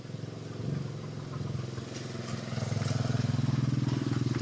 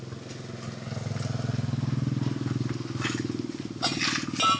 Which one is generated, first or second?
first